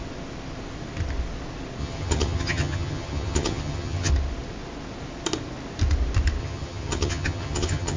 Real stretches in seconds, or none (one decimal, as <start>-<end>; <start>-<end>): 0.0-1.8; 4.1-6.4